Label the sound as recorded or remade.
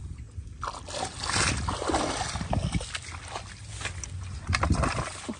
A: recorded